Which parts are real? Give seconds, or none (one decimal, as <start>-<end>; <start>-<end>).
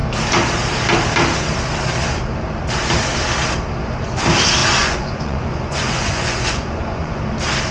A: 0.0-4.6; 7.2-7.7